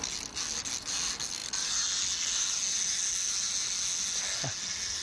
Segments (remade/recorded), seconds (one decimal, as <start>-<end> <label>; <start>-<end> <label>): 0.0-5.0 recorded